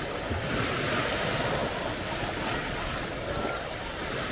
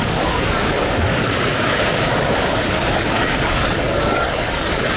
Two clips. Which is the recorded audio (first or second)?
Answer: first